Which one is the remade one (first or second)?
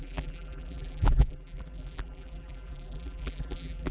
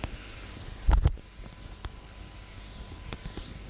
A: first